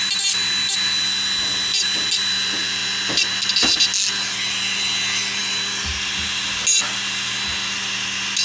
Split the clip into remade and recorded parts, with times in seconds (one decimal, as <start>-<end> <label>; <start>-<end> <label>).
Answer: 0.0-8.4 recorded